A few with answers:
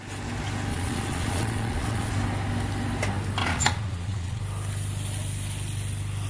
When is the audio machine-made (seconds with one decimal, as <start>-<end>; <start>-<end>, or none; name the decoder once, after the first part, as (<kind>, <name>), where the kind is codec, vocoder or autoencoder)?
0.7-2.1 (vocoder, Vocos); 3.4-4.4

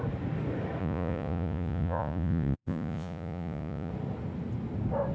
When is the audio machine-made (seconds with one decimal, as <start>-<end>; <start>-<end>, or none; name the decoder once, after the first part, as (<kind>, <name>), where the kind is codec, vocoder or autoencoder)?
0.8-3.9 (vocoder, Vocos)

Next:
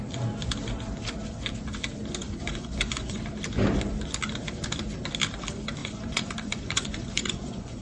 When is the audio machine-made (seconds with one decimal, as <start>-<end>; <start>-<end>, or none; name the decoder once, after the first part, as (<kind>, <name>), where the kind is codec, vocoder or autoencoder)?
2.2-3.2 (vocoder, Vocos); 5.8-7.8